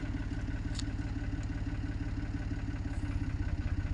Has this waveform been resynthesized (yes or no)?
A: no